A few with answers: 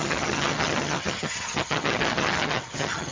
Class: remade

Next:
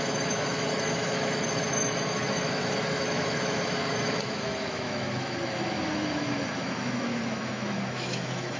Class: remade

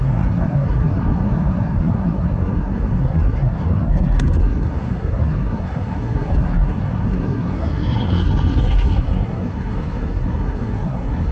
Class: remade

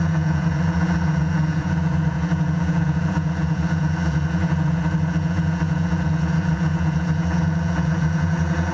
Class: remade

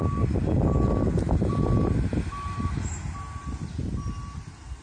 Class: recorded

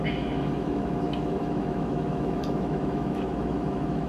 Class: remade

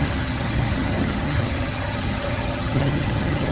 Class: remade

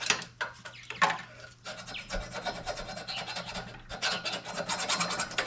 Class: recorded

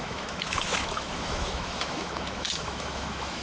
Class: remade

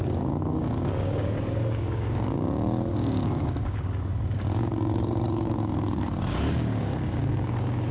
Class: remade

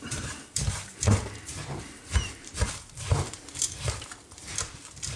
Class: remade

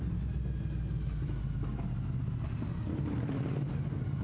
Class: recorded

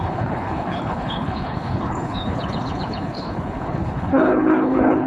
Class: remade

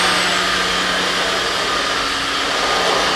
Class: recorded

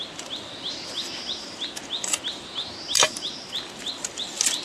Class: recorded